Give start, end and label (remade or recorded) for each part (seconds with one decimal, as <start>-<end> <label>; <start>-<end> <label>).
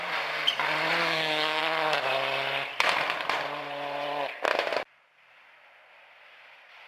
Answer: 0.0-1.0 recorded; 1.0-1.6 remade; 1.6-6.9 recorded